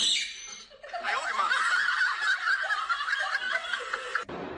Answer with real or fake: real